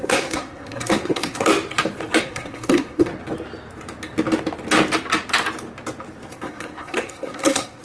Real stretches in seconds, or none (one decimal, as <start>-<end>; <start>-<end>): 1.5-2.2; 3.1-6.3